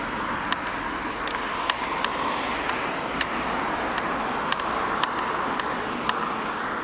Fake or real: real